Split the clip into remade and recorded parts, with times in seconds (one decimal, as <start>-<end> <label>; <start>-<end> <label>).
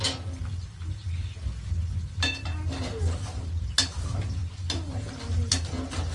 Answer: 0.0-6.1 recorded